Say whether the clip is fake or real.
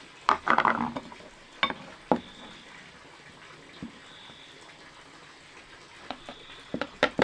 real